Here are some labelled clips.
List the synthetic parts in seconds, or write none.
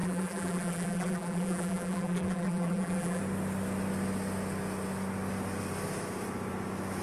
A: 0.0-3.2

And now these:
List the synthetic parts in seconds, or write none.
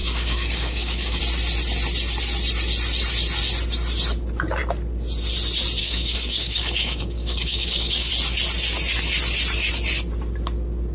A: 0.0-1.2; 5.8-8.1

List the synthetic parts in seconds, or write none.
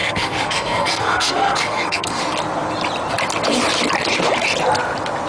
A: 0.0-2.2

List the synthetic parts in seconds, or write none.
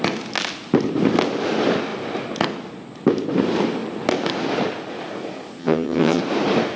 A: 5.6-6.2